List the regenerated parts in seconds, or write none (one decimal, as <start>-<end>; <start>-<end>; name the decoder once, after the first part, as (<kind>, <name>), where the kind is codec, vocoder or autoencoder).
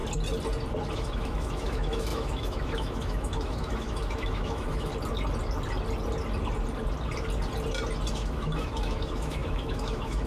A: 0.9-4.9 (autoencoder, DAC-VAE); 8.1-10.3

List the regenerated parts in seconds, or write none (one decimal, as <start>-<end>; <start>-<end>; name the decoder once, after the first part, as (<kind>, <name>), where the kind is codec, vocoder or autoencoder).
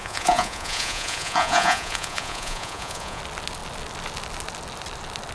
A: 0.0-3.2 (vocoder, Vocos)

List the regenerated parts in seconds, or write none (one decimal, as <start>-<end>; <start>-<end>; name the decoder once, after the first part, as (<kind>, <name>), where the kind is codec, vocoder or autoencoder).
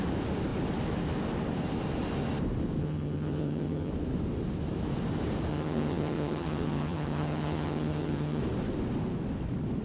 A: 2.8-3.9 (vocoder, HiFi-GAN); 5.5-8.4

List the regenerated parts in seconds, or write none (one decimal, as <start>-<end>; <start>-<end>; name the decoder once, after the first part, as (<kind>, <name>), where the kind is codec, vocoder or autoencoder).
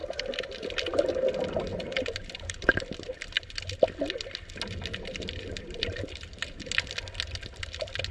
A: none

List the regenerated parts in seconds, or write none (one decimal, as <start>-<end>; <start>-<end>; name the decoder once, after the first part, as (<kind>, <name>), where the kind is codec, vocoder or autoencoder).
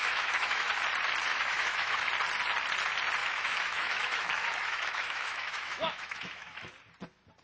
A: 0.0-0.7 (autoencoder, DAC-VAE); 1.3-2.1; 3.2-6.7